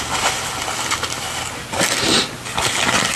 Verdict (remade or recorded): recorded